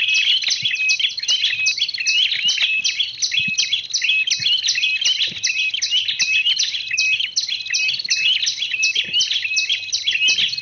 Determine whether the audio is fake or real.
real